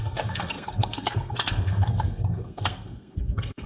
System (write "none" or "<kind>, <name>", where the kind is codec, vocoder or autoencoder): codec, SNAC